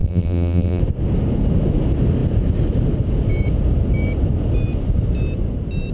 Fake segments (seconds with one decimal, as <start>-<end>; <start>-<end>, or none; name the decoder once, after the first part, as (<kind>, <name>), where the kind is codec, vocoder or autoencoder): 0.0-0.8 (vocoder, BigVGAN v2)